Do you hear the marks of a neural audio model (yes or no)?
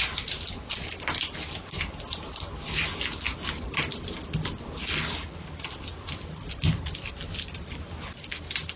no